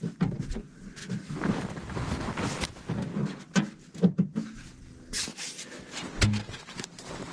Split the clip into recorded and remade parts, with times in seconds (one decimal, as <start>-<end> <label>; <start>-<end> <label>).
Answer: 0.0-7.3 recorded